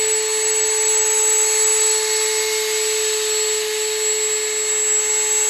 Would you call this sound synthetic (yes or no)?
no